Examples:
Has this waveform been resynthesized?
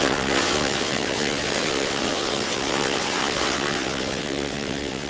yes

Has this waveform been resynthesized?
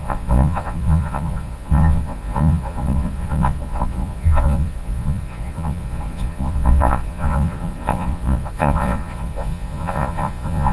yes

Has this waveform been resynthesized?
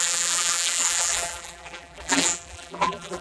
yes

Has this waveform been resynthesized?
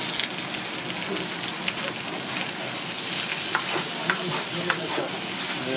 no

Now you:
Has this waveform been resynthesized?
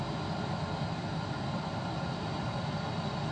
no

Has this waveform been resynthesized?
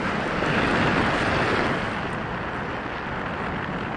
no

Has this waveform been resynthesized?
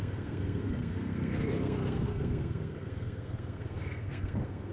yes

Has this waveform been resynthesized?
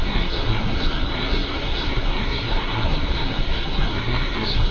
yes